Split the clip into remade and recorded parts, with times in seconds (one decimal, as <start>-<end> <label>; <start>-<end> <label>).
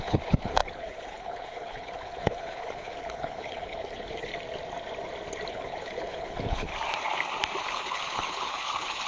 0.0-4.3 remade; 4.3-5.5 recorded; 5.5-6.7 remade; 6.7-7.6 recorded; 7.6-9.1 remade